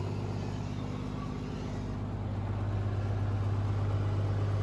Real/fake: real